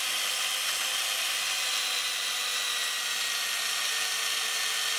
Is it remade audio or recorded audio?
recorded